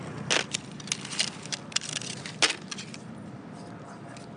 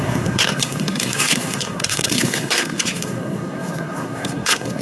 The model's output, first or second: second